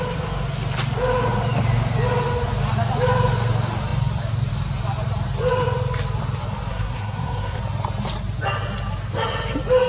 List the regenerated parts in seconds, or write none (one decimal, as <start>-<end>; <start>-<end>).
6.7-7.6